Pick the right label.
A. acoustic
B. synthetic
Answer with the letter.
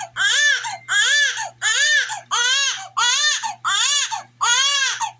A